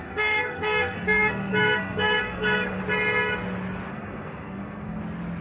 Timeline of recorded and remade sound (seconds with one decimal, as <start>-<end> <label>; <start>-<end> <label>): 0.0-2.8 remade; 2.8-3.9 recorded; 3.9-5.0 remade; 5.0-5.4 recorded